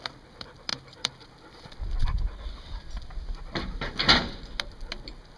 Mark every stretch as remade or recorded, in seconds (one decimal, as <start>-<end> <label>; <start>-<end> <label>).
0.0-5.4 recorded